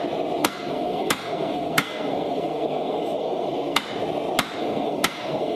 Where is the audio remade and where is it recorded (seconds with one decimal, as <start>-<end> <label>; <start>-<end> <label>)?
0.0-0.4 recorded; 0.4-3.8 remade; 3.8-4.6 recorded; 4.6-5.6 remade